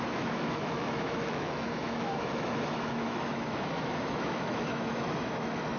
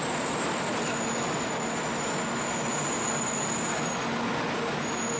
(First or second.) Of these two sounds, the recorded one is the second